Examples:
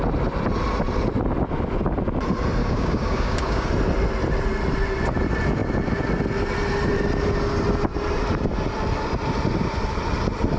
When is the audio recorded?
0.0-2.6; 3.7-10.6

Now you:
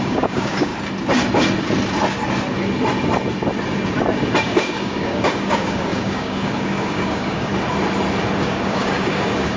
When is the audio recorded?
0.7-4.4; 7.5-8.4

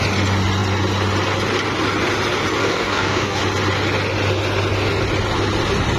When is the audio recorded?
0.0-2.6; 3.4-6.0

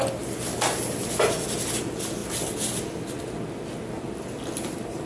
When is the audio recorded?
0.0-5.1